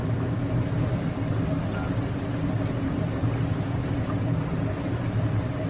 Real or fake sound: real